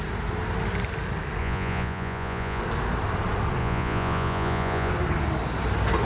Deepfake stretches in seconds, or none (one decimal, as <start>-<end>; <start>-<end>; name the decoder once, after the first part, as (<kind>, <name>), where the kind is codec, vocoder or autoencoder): 1.4-2.6 (vocoder, Vocos); 3.6-4.9